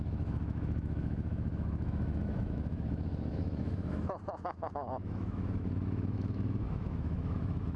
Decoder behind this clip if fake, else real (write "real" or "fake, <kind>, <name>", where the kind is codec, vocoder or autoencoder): fake, autoencoder, DAC-VAE